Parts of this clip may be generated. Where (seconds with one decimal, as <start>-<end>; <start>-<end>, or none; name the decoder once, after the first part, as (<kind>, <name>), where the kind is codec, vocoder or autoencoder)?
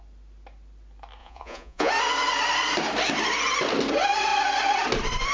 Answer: 1.2-1.9 (vocoder, Vocos)